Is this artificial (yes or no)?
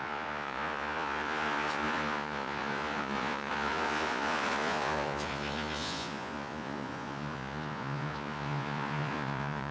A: yes